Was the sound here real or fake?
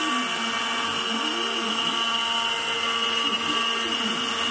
real